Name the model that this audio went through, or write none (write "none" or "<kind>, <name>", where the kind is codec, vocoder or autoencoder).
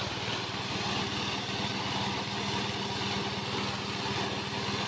none